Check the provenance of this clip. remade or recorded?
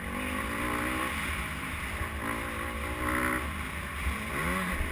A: recorded